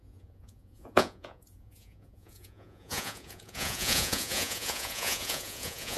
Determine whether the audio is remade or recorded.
remade